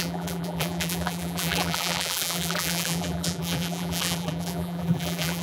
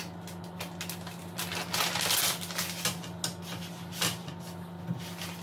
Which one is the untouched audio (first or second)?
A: second